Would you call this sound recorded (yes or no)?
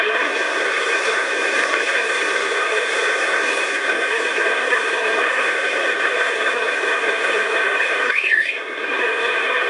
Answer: no